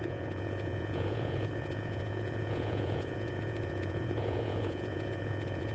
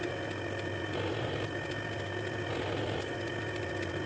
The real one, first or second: second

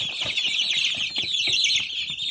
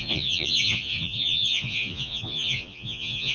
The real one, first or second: first